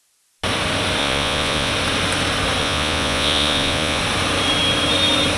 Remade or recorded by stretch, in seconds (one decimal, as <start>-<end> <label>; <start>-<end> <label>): 0.0-1.0 recorded; 1.0-1.7 remade; 1.7-2.6 recorded; 2.6-4.0 remade; 4.0-5.4 recorded